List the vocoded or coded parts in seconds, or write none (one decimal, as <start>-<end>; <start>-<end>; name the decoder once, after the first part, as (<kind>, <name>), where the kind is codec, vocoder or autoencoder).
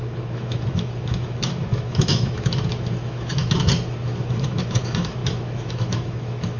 0.0-6.6 (autoencoder, DAC-VAE)